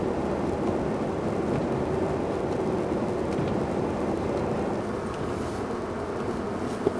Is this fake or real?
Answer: real